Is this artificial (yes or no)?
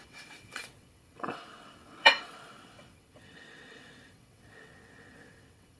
yes